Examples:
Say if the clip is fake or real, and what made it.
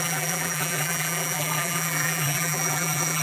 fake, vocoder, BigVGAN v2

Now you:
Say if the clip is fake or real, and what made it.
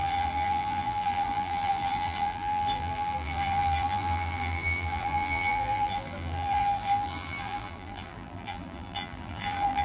fake, vocoder, BigVGAN v2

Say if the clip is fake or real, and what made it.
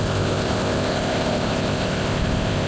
fake, codec, ZipCodec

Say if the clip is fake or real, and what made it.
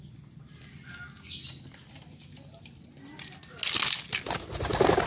real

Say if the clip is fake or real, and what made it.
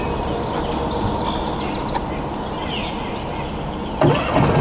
real